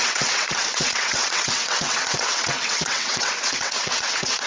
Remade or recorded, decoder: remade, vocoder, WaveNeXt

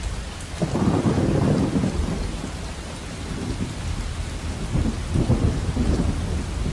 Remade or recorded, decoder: recorded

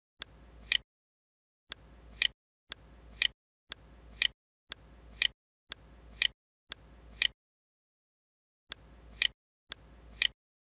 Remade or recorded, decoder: recorded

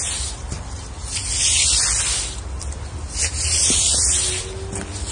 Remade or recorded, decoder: recorded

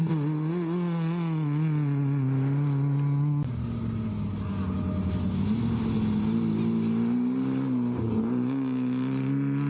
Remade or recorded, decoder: recorded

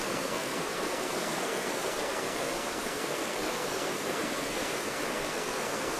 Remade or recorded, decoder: remade, codec, SNAC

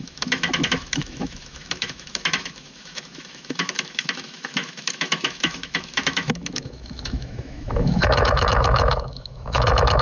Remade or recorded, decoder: remade, autoencoder, DAC-VAE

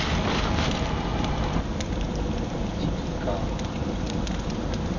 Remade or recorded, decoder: recorded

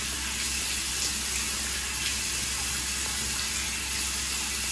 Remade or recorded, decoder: recorded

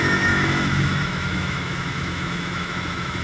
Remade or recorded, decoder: remade, autoencoder, DAC-VAE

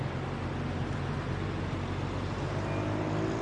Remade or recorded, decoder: recorded